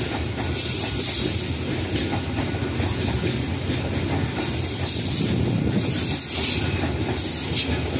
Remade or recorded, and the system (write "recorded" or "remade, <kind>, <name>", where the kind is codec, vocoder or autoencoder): recorded